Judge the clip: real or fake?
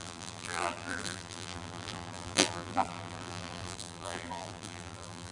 fake